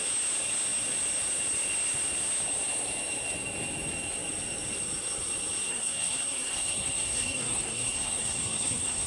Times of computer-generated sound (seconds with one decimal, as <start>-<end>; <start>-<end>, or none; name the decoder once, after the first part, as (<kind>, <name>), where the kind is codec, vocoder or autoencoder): 5.7-9.1 (codec, SNAC)